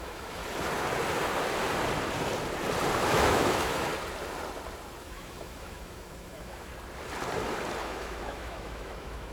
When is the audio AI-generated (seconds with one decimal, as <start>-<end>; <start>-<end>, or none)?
0.0-0.4; 3.1-3.9; 5.0-6.7; 7.8-9.3